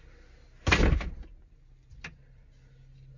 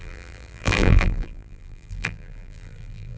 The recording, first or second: first